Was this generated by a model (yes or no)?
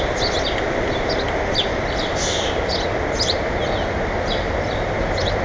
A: no